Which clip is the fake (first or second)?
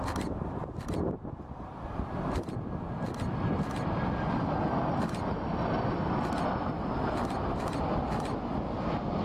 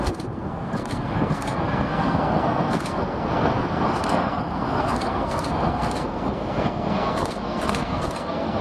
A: second